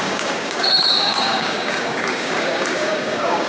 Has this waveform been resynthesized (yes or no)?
yes